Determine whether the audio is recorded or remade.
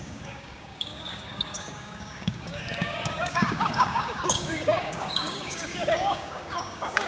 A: remade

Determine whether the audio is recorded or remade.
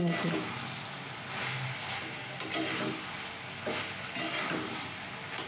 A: recorded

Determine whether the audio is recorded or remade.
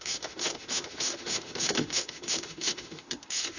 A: remade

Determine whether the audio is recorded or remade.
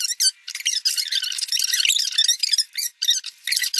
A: recorded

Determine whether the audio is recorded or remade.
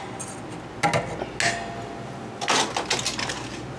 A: recorded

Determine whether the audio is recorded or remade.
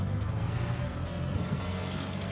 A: remade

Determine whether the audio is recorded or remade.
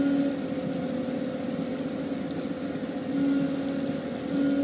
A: recorded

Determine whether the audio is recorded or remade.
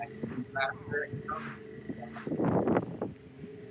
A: recorded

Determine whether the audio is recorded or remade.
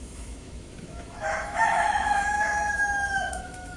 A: remade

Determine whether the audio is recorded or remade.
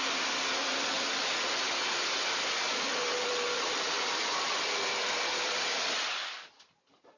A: recorded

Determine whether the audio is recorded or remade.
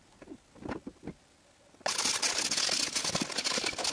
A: recorded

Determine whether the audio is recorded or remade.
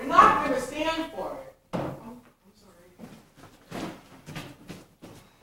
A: recorded